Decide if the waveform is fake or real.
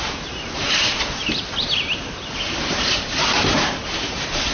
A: fake